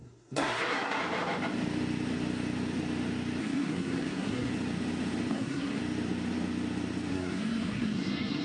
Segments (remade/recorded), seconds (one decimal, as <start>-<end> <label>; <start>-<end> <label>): 0.0-1.0 remade; 1.0-3.4 recorded; 3.4-4.5 remade; 4.5-5.3 recorded; 5.3-5.8 remade; 5.8-7.1 recorded; 7.1-8.4 remade